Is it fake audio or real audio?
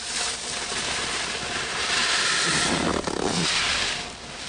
real